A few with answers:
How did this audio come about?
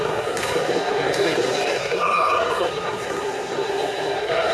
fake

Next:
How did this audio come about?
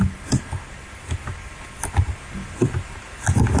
real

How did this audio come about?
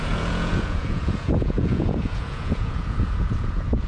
fake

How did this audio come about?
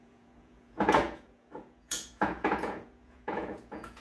fake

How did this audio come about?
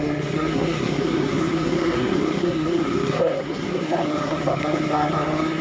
fake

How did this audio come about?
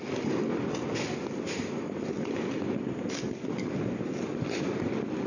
real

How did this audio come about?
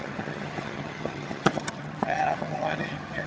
fake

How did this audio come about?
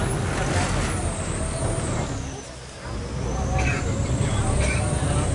real